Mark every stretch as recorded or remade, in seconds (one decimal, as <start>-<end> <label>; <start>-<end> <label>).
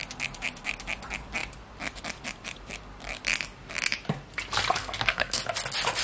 0.0-4.8 recorded; 4.8-5.4 remade; 5.4-6.0 recorded